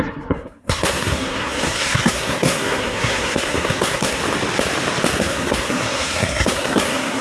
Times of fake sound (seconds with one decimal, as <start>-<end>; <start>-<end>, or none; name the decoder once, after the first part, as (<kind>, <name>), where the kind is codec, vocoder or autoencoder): 0.0-4.2 (codec, SNAC); 5.2-7.2